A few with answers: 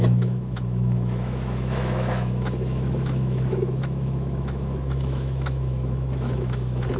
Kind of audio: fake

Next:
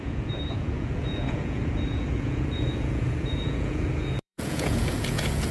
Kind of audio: fake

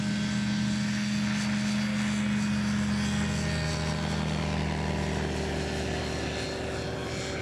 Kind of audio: real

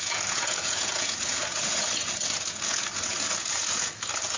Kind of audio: fake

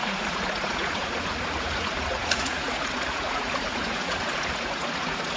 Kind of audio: fake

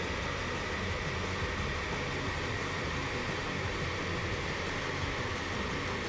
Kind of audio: real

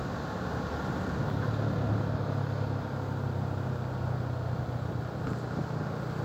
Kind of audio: real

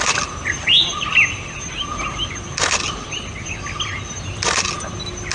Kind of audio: real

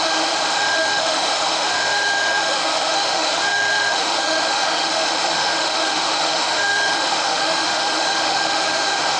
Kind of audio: fake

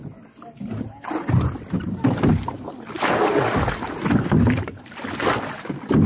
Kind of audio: real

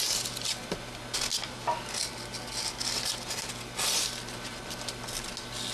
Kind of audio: real